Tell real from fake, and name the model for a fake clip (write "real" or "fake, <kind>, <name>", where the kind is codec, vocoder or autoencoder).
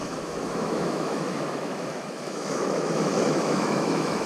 fake, autoencoder, DAC-VAE